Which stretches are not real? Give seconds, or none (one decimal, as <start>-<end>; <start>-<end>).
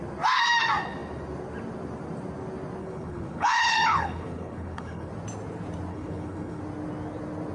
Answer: 2.8-5.1; 5.9-6.6